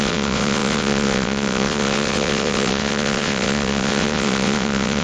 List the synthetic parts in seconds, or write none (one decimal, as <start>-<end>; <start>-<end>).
0.0-5.0